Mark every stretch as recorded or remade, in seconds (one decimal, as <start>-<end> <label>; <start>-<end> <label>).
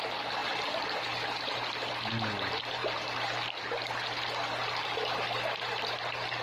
0.0-6.4 recorded